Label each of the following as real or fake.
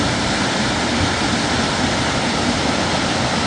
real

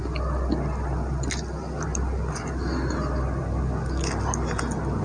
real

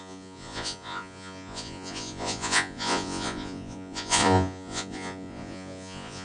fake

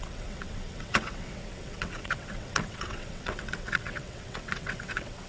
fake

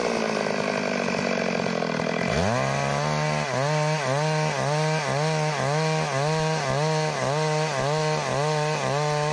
real